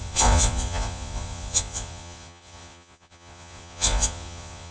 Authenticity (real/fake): fake